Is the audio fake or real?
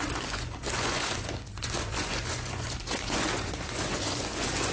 fake